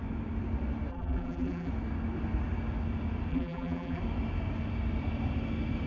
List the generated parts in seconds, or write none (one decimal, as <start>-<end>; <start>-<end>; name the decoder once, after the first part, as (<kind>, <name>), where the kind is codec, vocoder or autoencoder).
0.9-1.7 (vocoder, BigVGAN v2); 3.3-4.0